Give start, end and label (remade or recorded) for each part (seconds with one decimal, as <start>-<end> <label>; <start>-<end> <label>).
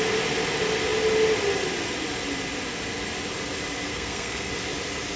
0.0-3.9 recorded; 3.9-4.5 remade; 4.5-5.2 recorded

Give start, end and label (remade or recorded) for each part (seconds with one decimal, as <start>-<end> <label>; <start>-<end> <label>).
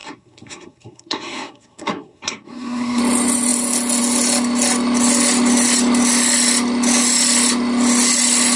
0.0-3.0 remade; 3.0-8.6 recorded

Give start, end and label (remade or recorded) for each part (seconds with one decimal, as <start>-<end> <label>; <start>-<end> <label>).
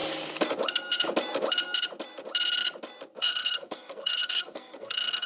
0.0-3.2 recorded; 3.2-5.3 remade